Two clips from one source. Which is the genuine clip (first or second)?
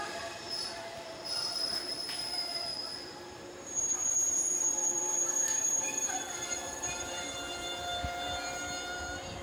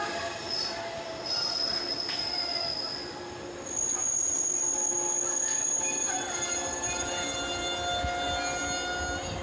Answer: second